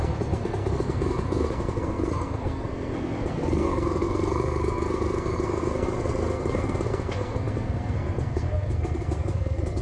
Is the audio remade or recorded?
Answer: remade